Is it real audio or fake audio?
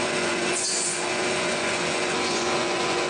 fake